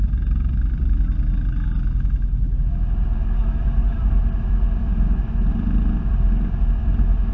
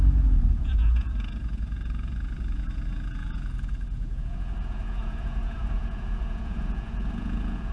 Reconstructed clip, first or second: second